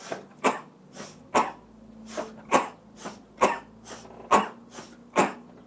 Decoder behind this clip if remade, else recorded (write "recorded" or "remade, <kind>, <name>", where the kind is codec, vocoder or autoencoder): recorded